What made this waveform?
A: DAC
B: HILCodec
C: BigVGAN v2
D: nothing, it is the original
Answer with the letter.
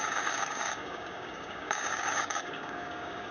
A